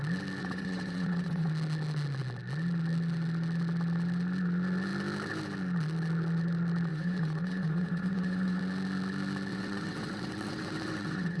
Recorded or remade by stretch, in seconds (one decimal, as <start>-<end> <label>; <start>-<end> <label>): 0.0-0.4 recorded; 0.4-1.5 remade; 1.5-6.9 recorded; 6.9-8.6 remade; 8.6-9.5 recorded; 9.5-11.4 remade

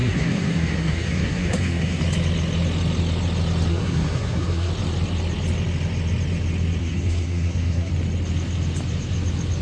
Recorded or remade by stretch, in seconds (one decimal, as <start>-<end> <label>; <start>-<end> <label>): 0.0-2.0 remade; 2.0-3.7 recorded; 3.7-4.7 remade; 4.7-6.8 recorded; 6.8-7.9 remade; 7.9-9.6 recorded

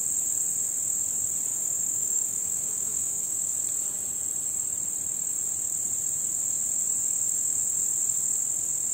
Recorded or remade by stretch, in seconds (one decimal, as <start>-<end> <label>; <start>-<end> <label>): 0.0-1.5 recorded; 1.5-3.5 remade; 3.5-8.9 recorded

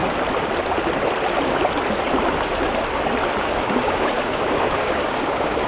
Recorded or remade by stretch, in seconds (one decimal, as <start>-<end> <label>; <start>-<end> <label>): 0.0-3.4 recorded; 3.4-5.7 remade